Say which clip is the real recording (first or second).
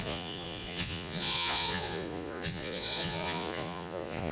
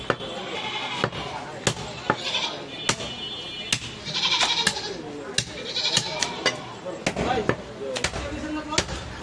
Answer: second